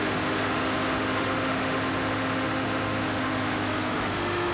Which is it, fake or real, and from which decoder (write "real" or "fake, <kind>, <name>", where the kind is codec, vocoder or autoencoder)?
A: fake, autoencoder, DAC-VAE